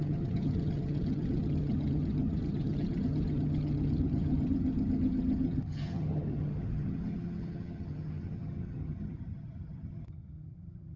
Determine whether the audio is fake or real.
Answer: fake